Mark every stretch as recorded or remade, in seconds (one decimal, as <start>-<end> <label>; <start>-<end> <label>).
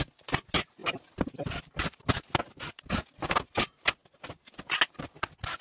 0.0-5.6 recorded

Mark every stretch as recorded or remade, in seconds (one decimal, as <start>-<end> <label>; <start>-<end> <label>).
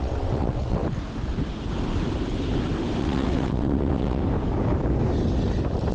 0.0-0.8 remade; 0.8-3.0 recorded; 3.0-4.2 remade; 4.2-5.9 recorded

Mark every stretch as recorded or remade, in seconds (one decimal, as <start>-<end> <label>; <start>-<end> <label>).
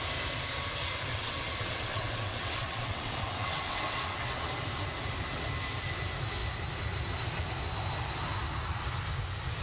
0.0-1.1 recorded; 1.1-4.5 remade; 4.5-9.6 recorded